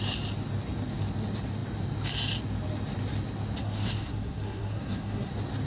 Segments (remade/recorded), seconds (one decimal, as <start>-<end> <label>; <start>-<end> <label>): 0.0-3.6 recorded; 3.6-5.3 remade; 5.3-5.7 recorded